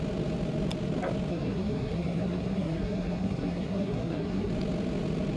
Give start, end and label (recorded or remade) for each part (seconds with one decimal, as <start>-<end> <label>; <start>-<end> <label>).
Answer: 0.0-1.3 recorded; 1.3-4.5 remade; 4.5-5.4 recorded